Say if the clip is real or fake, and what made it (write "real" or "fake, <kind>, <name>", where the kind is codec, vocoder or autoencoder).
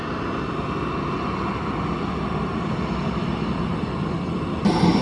real